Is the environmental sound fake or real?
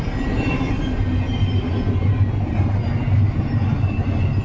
real